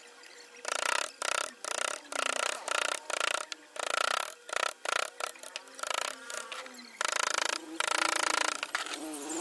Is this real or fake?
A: real